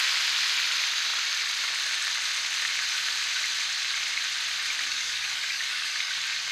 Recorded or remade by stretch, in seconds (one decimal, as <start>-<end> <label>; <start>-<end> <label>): 0.0-4.9 recorded; 4.9-6.1 remade; 6.1-6.5 recorded